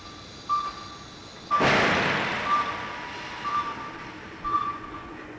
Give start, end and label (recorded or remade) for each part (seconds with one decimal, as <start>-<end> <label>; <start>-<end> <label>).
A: 0.0-4.5 recorded; 4.5-5.4 remade